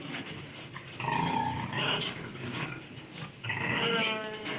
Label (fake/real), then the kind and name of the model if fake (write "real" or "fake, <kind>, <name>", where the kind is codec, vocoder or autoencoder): fake, codec, DAC